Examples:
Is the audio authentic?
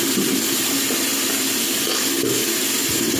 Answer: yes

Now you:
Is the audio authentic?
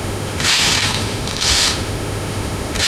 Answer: no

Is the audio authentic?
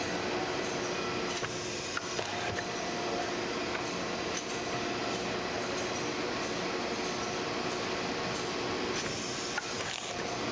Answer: yes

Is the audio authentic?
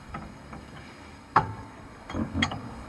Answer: no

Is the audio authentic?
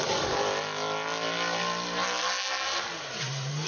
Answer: yes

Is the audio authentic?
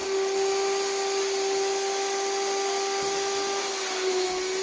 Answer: yes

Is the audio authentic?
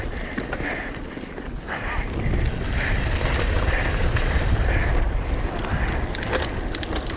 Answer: yes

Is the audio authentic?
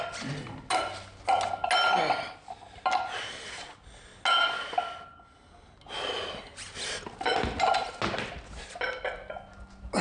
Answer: yes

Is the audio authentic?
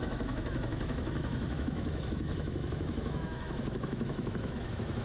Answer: no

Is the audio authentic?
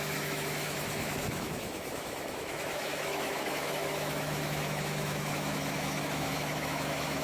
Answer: no